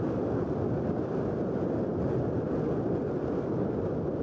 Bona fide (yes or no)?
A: yes